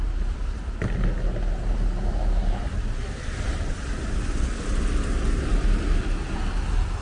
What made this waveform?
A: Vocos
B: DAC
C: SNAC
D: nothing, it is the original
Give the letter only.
D